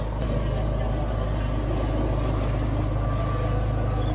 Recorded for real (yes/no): yes